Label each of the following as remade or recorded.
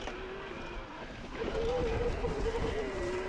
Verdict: recorded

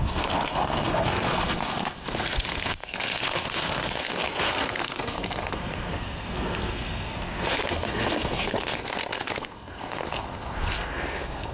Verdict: remade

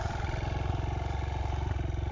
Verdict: recorded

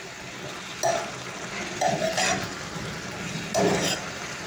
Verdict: recorded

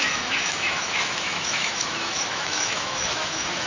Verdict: remade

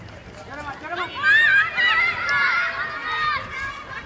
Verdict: recorded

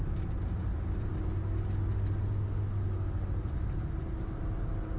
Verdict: recorded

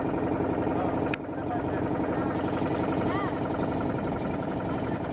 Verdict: recorded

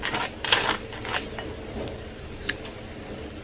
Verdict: recorded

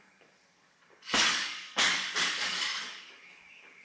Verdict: remade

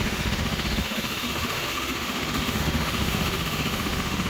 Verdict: remade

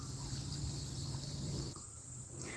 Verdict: remade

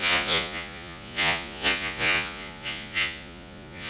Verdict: remade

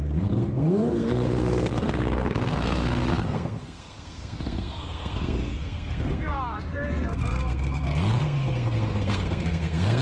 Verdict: remade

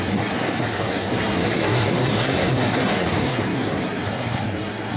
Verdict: remade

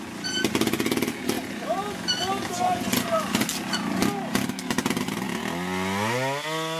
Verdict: recorded